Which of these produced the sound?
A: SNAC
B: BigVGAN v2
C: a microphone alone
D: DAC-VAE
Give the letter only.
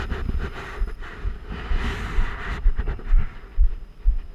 C